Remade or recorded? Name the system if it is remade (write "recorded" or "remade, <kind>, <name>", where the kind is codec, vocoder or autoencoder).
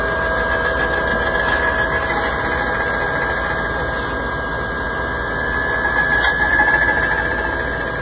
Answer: recorded